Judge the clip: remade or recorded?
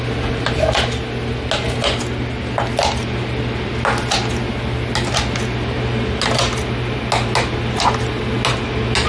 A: recorded